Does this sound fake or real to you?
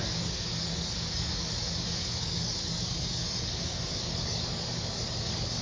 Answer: fake